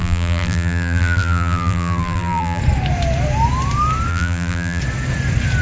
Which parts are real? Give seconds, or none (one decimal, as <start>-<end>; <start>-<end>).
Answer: 2.6-4.1; 4.8-5.6